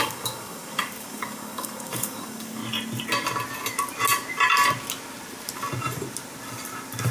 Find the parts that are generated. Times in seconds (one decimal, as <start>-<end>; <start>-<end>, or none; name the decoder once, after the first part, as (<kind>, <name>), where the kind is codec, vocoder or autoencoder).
0.0-2.6 (codec, DAC)